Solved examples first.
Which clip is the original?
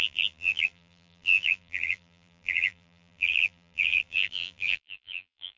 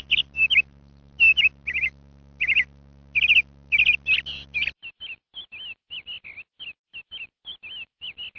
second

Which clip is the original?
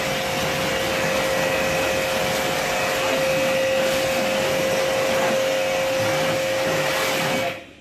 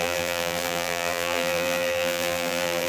first